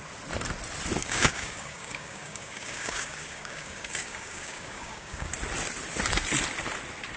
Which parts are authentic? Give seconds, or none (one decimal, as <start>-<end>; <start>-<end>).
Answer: 0.0-1.0; 5.3-7.2